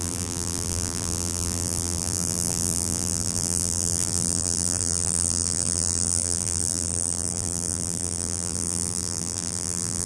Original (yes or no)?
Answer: no